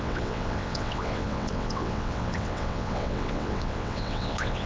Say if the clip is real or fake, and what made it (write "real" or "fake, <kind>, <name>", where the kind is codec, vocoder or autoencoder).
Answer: fake, vocoder, WaveNeXt